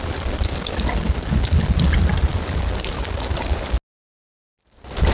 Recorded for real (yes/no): yes